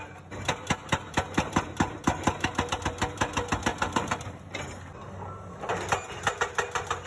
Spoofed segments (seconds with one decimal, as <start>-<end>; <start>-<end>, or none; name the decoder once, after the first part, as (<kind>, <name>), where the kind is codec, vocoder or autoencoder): 0.8-1.6 (vocoder, BigVGAN v2); 3.7-4.6